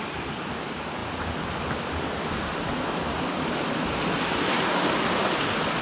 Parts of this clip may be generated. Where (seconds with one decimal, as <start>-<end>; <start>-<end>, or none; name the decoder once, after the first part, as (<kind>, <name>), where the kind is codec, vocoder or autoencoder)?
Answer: none